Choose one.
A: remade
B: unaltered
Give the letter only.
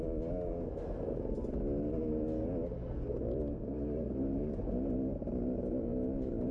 B